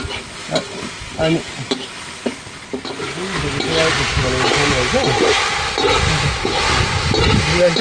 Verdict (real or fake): real